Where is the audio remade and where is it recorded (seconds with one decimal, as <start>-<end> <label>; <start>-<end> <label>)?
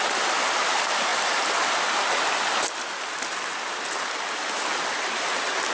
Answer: 0.0-5.7 recorded